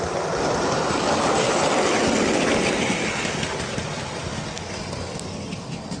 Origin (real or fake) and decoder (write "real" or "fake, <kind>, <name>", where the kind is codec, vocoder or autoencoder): real